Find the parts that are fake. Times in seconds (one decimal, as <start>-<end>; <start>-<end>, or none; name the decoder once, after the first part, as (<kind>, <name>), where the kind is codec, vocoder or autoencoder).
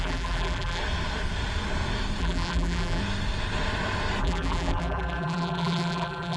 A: 0.0-0.8 (vocoder, BigVGAN v2); 2.2-3.0; 4.2-6.4